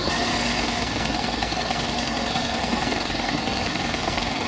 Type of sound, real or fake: fake